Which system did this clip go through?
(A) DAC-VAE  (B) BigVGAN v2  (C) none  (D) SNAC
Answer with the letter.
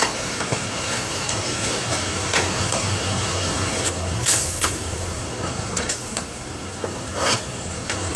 D